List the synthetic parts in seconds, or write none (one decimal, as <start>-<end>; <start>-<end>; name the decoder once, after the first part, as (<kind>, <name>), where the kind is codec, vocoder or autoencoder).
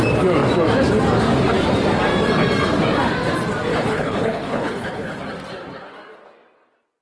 3.7-5.2 (codec, HILCodec)